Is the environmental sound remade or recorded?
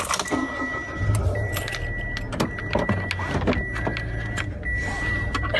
recorded